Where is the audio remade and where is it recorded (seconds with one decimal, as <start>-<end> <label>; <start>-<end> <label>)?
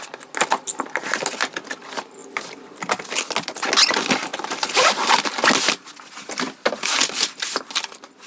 0.0-8.3 recorded